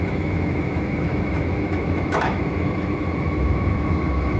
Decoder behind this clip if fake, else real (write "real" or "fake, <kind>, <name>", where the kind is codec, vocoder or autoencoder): fake, autoencoder, DAC-VAE